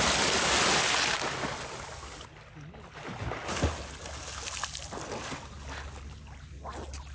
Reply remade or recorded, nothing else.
recorded